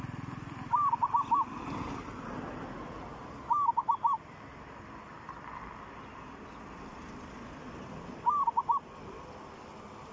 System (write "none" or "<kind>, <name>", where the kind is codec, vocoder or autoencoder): none